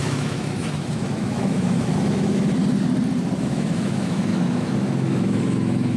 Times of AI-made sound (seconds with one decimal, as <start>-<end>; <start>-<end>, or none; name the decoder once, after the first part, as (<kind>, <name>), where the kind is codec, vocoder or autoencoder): 0.0-2.6 (autoencoder, DAC-VAE); 3.4-6.0

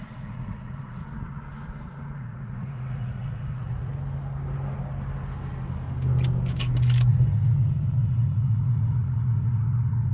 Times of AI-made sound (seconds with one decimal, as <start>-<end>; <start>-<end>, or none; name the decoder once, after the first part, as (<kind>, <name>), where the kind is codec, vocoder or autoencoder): 0.0-1.0 (vocoder, Vocos); 2.2-3.9; 7.1-10.1

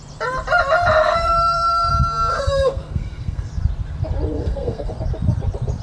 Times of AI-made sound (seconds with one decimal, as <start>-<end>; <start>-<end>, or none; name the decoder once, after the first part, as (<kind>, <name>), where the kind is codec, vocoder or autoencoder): 1.0-1.9 (codec, SNAC); 2.3-3.5; 4.3-4.9

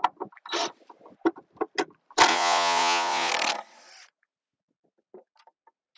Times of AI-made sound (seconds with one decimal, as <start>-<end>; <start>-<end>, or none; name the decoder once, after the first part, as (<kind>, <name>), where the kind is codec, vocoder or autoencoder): 2.3-3.3 (vocoder, Vocos)

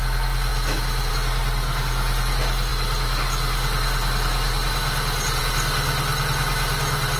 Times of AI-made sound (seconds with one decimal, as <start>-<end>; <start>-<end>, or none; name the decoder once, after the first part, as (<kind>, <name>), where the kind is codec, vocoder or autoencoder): none

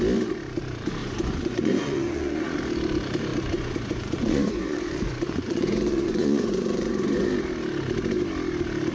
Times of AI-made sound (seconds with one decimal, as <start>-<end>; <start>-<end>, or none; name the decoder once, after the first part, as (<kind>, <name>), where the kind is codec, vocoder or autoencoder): 1.0-2.6 (vocoder, Vocos); 3.3-7.3

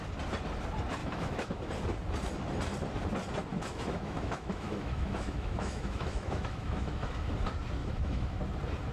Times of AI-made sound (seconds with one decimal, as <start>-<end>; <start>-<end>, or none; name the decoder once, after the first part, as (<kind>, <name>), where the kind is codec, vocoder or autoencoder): 1.0-1.7 (autoencoder, DAC-VAE); 3.5-7.3; 7.8-8.4

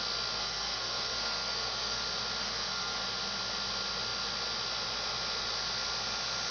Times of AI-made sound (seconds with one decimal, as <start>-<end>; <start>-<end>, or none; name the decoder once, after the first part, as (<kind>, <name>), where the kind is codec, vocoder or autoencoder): 0.4-2.0 (codec, SNAC); 2.4-3.0